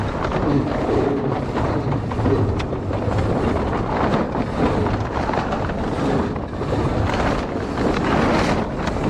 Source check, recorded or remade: recorded